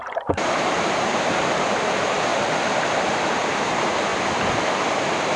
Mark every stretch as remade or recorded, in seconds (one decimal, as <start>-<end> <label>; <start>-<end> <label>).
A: 0.0-2.3 remade; 2.3-2.9 recorded; 2.9-4.1 remade; 4.1-4.9 recorded; 4.9-5.4 remade

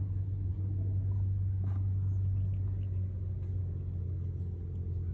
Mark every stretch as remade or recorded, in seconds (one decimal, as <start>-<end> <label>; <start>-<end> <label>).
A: 0.0-5.1 recorded